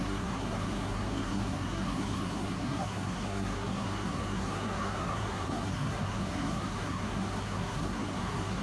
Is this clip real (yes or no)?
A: no